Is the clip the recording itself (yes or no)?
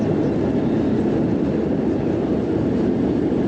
yes